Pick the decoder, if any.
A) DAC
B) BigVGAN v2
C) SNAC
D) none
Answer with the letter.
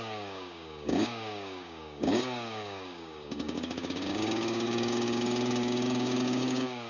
A